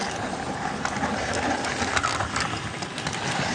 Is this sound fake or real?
real